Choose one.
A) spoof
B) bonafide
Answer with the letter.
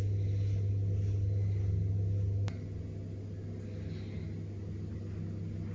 B